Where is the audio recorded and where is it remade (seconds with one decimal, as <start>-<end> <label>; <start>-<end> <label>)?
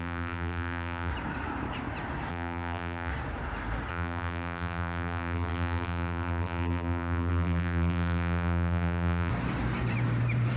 0.0-1.1 remade; 1.1-2.3 recorded; 2.3-3.1 remade; 3.1-3.9 recorded; 3.9-9.3 remade; 9.3-10.6 recorded